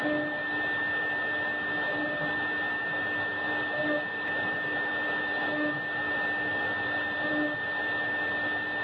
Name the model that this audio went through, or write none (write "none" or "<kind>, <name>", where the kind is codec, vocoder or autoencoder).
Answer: none